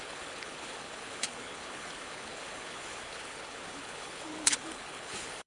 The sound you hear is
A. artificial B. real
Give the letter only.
A